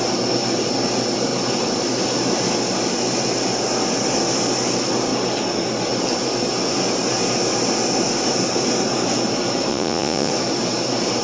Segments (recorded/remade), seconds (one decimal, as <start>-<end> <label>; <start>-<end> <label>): 0.0-9.7 recorded; 9.7-10.3 remade; 10.3-11.2 recorded

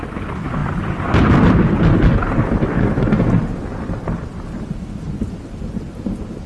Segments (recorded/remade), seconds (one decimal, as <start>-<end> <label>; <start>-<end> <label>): 0.0-6.5 recorded

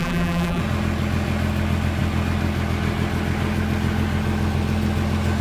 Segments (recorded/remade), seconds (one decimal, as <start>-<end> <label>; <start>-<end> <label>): 0.0-0.6 remade; 0.6-5.4 recorded